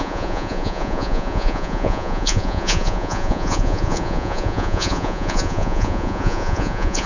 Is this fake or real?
fake